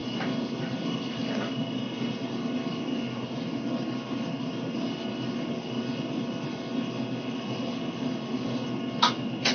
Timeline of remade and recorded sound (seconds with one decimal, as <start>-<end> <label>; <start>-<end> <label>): 0.0-9.5 recorded